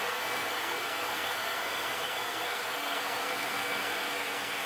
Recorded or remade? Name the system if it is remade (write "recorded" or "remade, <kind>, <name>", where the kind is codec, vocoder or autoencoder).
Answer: remade, codec, SNAC